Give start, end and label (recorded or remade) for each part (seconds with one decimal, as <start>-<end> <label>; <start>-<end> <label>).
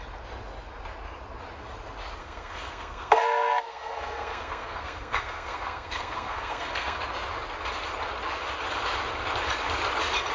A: 0.0-2.2 recorded; 2.2-7.0 remade; 7.0-10.3 recorded